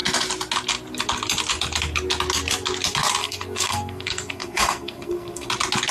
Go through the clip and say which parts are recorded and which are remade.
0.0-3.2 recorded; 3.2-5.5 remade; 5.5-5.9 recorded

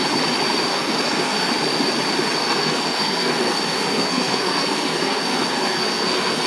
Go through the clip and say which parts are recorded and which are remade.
0.0-0.7 recorded; 0.7-1.5 remade; 1.5-2.4 recorded; 2.4-6.5 remade

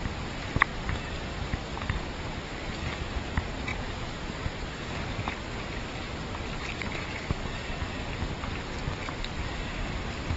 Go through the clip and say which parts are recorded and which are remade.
0.0-10.4 recorded